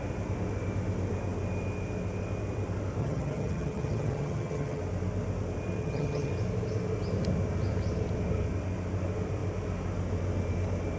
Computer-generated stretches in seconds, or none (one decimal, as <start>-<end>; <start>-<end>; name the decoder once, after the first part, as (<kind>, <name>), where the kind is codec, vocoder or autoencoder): 3.0-4.8 (vocoder, HiFi-GAN); 5.8-6.3